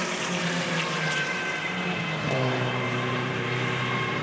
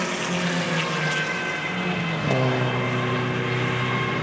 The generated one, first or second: first